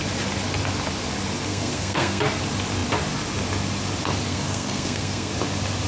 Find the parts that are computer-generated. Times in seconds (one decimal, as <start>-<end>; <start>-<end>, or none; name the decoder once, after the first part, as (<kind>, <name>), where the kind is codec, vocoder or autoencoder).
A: 1.5-2.2 (codec, SNAC); 4.3-5.3